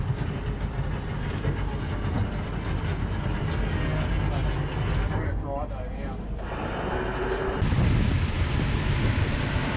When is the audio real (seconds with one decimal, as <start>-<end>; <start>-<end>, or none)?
0.0-9.8